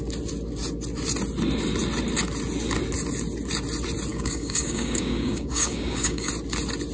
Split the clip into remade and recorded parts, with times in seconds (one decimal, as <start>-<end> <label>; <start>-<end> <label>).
0.0-4.1 recorded; 4.1-6.3 remade; 6.3-6.9 recorded